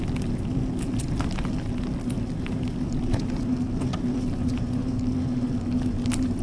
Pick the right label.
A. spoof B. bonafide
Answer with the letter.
B